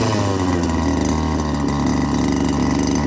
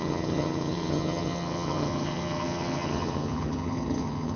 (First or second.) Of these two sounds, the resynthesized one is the second